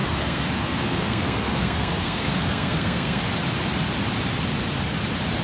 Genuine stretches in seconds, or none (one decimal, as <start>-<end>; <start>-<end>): 3.2-5.4